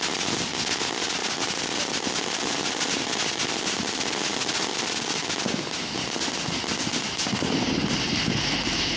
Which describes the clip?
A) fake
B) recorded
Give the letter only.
B